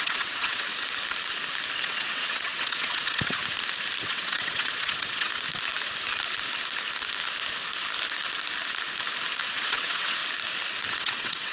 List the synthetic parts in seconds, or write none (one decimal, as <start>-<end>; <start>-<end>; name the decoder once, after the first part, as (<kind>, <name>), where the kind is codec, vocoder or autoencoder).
0.0-0.7 (vocoder, WaveNeXt); 1.8-3.4; 4.0-5.3; 9.4-10.2; 10.9-11.5